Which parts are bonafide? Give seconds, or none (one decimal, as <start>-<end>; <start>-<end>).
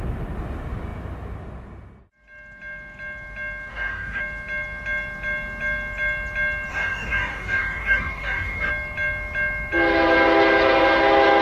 0.0-3.7; 4.2-6.7; 8.7-11.4